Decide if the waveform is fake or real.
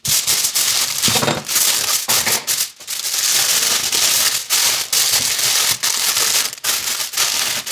real